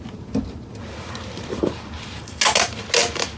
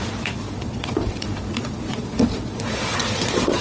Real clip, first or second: first